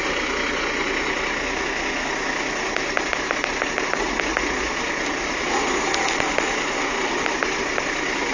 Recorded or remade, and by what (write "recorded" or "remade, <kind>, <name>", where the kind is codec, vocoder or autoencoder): recorded